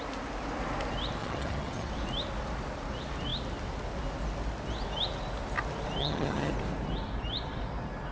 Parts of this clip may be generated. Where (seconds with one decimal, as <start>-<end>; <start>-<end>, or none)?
1.2-1.9; 6.0-6.5